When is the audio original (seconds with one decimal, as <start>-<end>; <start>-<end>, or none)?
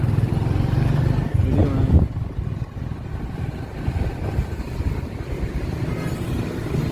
0.0-6.9